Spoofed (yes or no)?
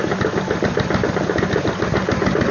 no